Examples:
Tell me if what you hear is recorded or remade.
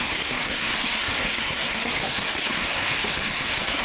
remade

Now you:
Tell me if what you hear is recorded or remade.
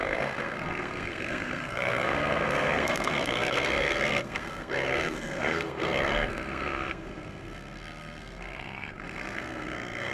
remade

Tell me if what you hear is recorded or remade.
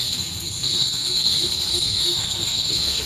remade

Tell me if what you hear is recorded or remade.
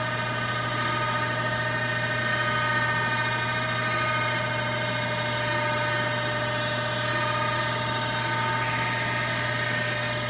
recorded